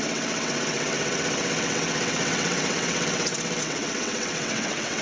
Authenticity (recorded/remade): remade